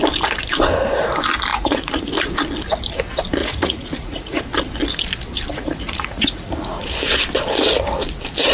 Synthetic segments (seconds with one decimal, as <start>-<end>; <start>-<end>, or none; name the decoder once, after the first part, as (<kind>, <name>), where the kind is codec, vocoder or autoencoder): 1.5-2.1 (vocoder, Vocos); 3.4-4.4; 5.5-6.9